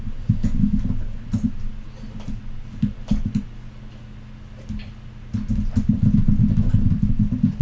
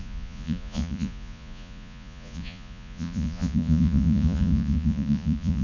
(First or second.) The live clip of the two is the first